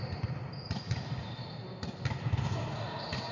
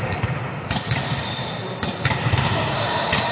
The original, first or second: first